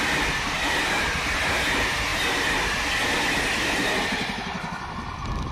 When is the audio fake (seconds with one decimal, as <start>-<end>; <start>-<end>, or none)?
none